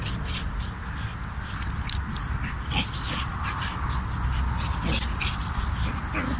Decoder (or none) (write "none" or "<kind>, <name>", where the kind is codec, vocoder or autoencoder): none